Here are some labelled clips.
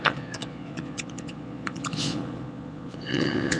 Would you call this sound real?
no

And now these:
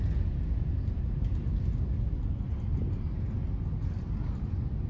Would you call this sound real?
yes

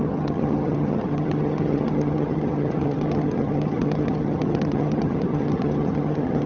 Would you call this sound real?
no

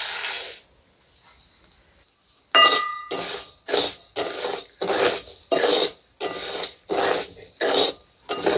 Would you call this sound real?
yes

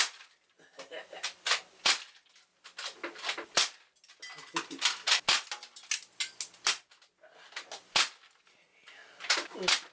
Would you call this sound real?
yes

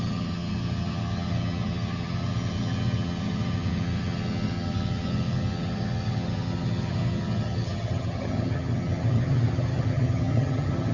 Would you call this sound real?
no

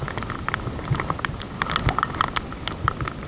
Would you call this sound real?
yes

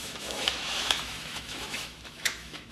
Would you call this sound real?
no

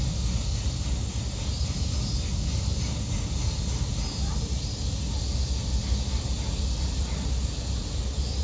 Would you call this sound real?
yes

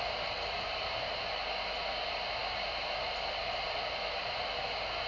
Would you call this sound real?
yes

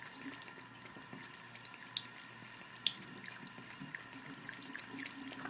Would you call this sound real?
yes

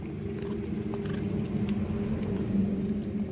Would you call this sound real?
yes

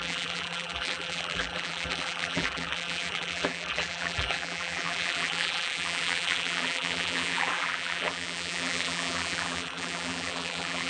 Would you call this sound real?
no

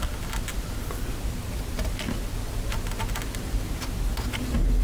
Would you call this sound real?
yes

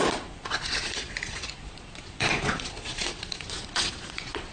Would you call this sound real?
no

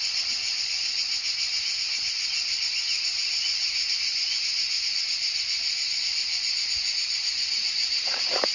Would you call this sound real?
yes